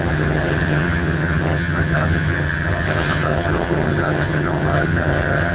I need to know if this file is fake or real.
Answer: fake